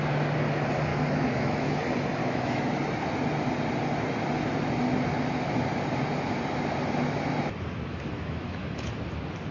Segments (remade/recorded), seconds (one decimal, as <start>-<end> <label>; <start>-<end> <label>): 0.0-0.9 recorded; 0.9-1.8 remade; 1.8-2.2 recorded; 2.2-2.8 remade; 2.8-7.9 recorded; 7.9-8.9 remade; 8.9-9.5 recorded

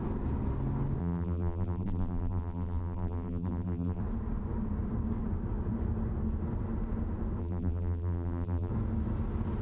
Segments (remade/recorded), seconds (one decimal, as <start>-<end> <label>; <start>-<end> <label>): 0.0-1.0 recorded; 1.0-4.0 remade; 4.0-7.4 recorded; 7.4-8.7 remade; 8.7-9.6 recorded

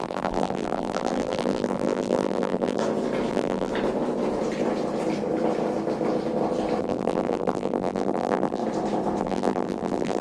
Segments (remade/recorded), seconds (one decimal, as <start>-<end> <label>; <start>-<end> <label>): 0.0-2.8 remade; 2.8-3.3 recorded; 3.3-3.7 remade; 3.7-6.8 recorded; 6.8-8.6 remade; 8.6-9.2 recorded; 9.2-10.2 remade